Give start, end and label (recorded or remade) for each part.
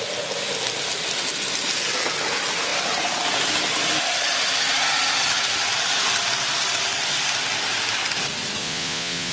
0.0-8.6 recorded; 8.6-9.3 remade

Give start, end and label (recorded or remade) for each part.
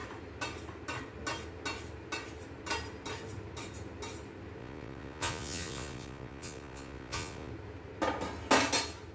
0.0-4.6 recorded; 4.6-7.5 remade; 7.5-9.1 recorded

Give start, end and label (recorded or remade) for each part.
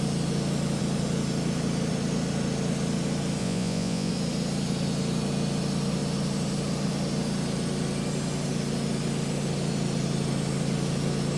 0.0-3.4 recorded; 3.4-4.1 remade; 4.1-11.4 recorded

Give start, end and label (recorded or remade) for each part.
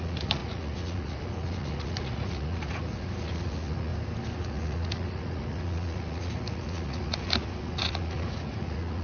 0.0-3.9 remade; 3.9-4.4 recorded; 4.4-9.0 remade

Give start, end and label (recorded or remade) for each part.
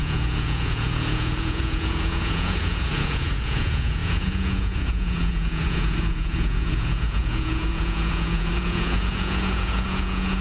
0.0-10.4 remade